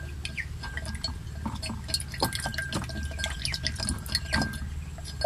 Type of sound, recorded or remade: recorded